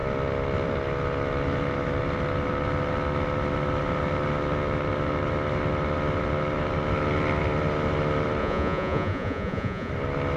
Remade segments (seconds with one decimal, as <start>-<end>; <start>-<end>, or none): 8.4-9.9